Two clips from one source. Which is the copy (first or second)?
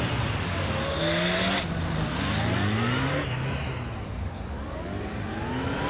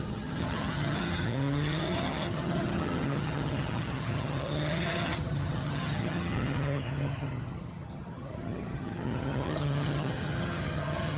second